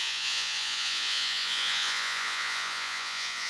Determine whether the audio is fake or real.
fake